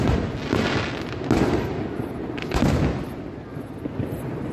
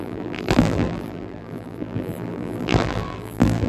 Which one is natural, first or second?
first